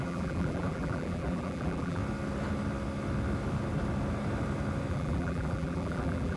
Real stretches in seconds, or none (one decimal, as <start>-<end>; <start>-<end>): 2.0-4.9